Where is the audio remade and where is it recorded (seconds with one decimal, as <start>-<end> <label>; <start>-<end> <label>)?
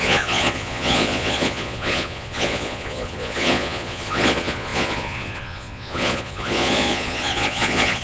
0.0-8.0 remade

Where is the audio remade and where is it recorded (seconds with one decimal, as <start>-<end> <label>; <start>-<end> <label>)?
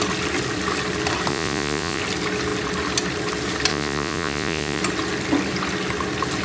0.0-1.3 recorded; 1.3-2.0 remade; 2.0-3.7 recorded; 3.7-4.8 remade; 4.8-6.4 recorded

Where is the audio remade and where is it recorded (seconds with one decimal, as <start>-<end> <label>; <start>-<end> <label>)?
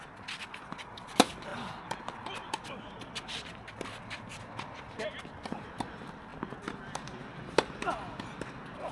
0.0-8.9 recorded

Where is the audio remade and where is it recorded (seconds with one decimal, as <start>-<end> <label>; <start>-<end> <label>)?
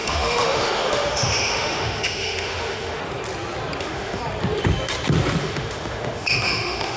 0.0-3.0 remade; 3.0-3.8 recorded; 3.8-4.2 remade; 4.2-5.4 recorded; 5.4-7.0 remade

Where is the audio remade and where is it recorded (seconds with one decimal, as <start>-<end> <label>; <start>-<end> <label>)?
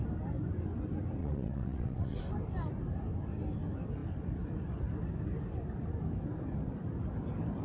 0.0-1.2 recorded; 1.2-2.2 remade; 2.2-7.6 recorded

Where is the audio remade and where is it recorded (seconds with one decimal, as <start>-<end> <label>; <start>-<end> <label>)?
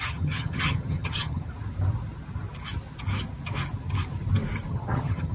0.0-1.5 remade; 1.5-4.7 recorded; 4.7-5.3 remade